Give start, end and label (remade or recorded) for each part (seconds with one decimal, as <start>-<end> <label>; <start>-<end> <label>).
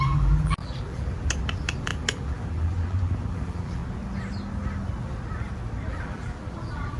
0.0-3.8 remade; 3.8-5.9 recorded; 5.9-7.0 remade